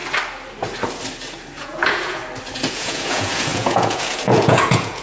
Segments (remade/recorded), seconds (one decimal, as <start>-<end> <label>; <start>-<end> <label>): 0.0-1.6 recorded; 1.6-2.2 remade; 2.2-2.7 recorded; 2.7-5.0 remade